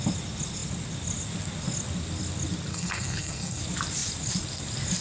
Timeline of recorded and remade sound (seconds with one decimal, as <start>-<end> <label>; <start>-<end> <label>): 0.0-2.7 recorded; 2.7-3.6 remade; 3.6-5.0 recorded